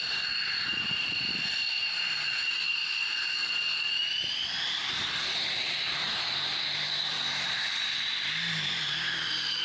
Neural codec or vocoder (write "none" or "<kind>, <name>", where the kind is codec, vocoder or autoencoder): vocoder, BigVGAN v2